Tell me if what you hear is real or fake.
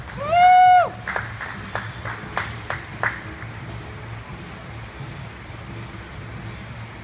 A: real